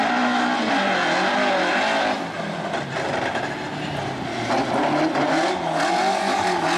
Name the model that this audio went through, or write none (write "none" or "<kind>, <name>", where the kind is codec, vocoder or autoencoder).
none